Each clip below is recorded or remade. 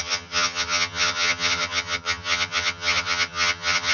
remade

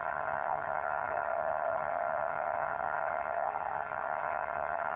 remade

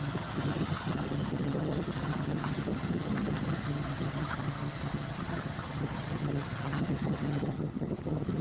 remade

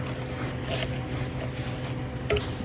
recorded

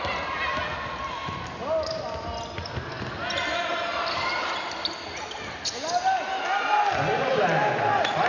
recorded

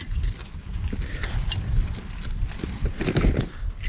recorded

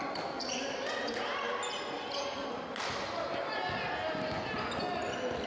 recorded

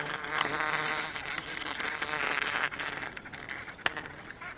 recorded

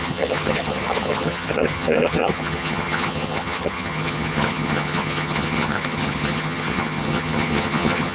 remade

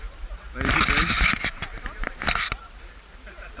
recorded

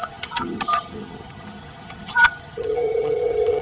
remade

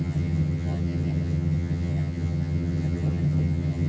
remade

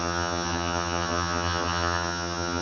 remade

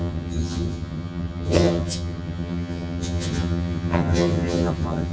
remade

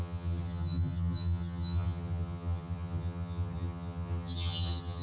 remade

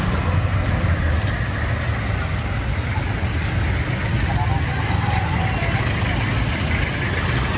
recorded